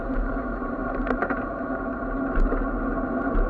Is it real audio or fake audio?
real